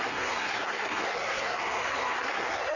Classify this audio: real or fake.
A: fake